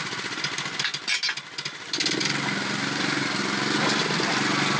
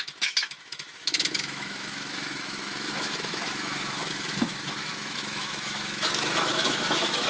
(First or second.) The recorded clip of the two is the first